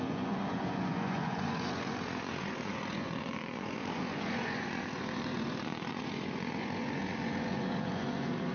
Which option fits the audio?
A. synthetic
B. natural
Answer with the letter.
A